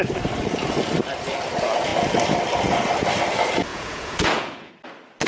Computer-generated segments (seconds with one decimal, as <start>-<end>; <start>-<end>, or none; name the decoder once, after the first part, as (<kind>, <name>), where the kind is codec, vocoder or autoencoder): 3.7-4.7 (vocoder, Vocos)